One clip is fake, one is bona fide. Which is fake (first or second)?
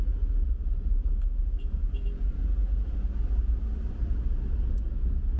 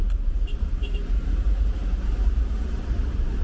second